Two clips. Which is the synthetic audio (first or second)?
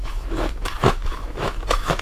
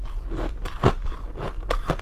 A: first